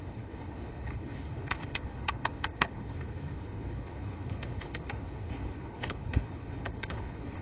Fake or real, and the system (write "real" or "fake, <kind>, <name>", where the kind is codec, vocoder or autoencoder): fake, codec, HILCodec